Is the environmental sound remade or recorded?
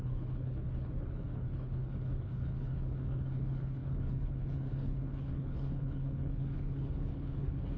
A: remade